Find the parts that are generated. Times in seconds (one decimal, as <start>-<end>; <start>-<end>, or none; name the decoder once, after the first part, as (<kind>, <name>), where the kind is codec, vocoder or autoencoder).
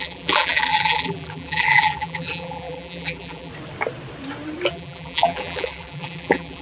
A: 0.0-3.5 (vocoder, BigVGAN v2); 4.7-6.6